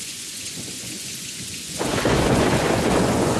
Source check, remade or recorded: remade